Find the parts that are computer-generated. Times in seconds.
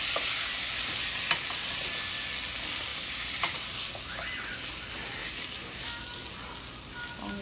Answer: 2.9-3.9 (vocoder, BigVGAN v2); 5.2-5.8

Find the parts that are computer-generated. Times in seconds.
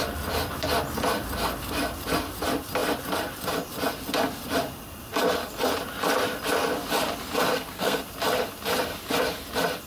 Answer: 7.5-8.0 (codec, SNAC)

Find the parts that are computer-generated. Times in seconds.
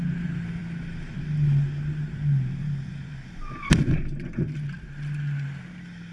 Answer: none